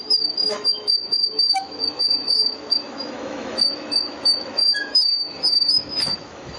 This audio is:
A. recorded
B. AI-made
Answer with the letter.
B